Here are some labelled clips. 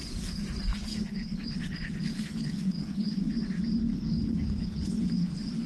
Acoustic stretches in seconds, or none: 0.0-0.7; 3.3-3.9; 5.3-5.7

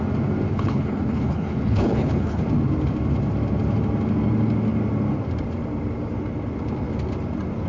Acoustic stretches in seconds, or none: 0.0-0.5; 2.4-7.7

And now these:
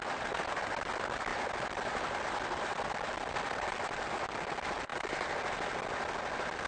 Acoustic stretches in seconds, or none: 0.0-6.7